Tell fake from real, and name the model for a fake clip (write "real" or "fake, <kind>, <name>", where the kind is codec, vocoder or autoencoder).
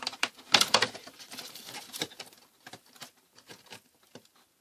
fake, vocoder, BigVGAN v2